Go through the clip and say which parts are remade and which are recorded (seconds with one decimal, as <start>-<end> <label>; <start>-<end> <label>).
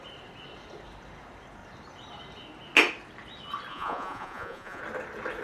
0.0-3.7 recorded; 3.7-4.8 remade; 4.8-5.4 recorded